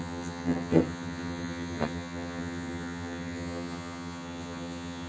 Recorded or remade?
remade